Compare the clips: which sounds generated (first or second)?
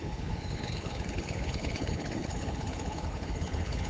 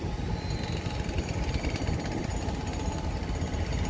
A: first